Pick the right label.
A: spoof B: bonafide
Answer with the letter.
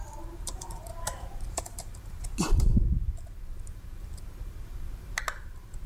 B